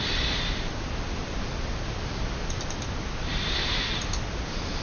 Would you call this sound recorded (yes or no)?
yes